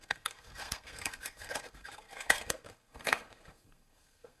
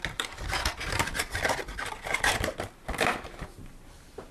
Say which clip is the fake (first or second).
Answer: first